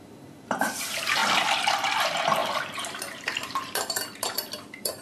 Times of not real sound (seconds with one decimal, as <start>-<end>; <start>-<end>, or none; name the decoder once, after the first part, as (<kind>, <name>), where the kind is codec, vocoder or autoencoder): 0.0-1.2 (vocoder, BigVGAN v2); 2.0-5.0